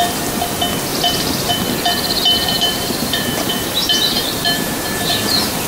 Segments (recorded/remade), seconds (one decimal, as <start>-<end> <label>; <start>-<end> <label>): 0.0-0.9 recorded; 0.9-1.5 remade; 1.5-2.5 recorded; 2.5-5.7 remade